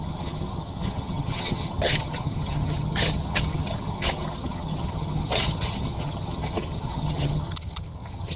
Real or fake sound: fake